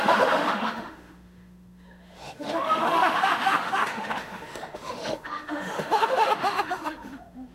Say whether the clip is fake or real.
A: fake